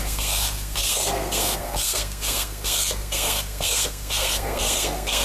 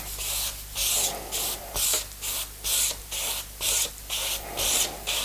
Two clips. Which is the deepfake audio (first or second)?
first